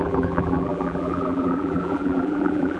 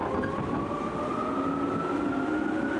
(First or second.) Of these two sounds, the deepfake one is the first